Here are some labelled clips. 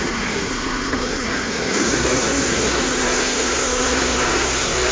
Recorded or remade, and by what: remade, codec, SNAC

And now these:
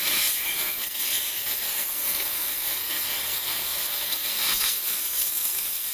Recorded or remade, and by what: remade, codec, SNAC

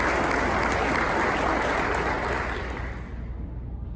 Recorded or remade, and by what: recorded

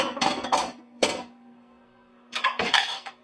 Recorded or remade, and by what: remade, codec, SNAC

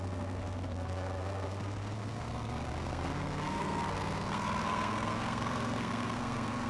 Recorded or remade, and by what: remade, codec, SNAC